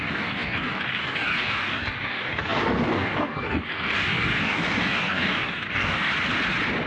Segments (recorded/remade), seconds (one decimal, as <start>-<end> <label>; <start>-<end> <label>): 0.0-6.1 remade; 6.1-6.9 recorded